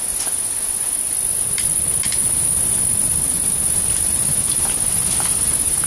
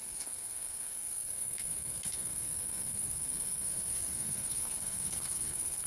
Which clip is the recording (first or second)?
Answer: first